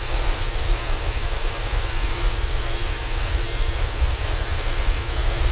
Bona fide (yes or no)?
no